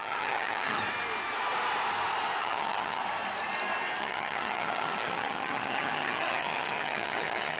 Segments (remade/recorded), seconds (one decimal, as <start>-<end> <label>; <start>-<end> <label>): 0.0-0.8 remade; 0.8-2.4 recorded; 2.4-3.0 remade; 3.0-4.0 recorded; 4.0-7.6 remade